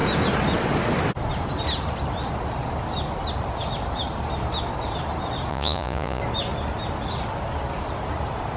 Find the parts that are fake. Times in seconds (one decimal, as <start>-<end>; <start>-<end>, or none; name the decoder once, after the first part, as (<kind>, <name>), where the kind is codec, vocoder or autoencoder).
5.5-6.2 (vocoder, Vocos)